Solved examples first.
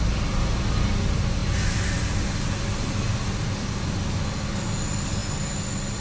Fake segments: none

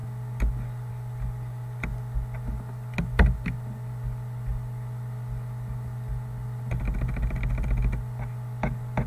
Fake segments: none